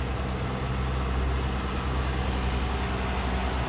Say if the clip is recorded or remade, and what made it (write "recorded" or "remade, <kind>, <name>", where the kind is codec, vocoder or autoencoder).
recorded